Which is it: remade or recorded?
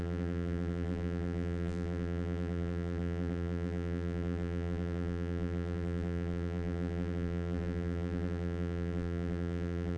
remade